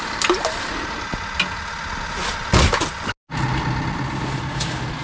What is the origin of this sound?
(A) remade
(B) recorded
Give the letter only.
B